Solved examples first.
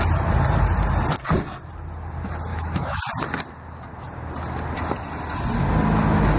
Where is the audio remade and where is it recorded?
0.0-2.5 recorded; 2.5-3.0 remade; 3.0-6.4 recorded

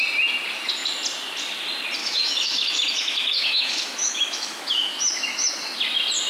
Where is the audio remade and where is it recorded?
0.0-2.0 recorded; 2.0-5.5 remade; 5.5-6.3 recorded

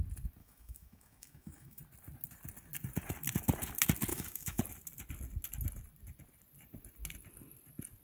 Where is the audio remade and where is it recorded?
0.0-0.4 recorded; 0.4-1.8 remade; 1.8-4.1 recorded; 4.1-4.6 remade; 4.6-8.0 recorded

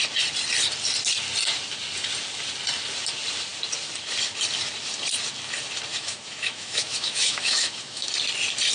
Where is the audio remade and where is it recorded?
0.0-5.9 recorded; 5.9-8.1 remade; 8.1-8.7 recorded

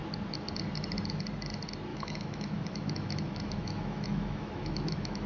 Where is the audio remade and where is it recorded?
0.0-1.9 recorded; 1.9-5.3 remade